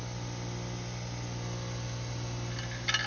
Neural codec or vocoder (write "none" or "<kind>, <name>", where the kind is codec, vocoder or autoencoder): none